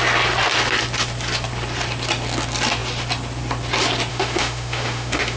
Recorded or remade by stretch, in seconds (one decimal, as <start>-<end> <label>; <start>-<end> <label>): 0.0-4.1 recorded; 4.1-5.4 remade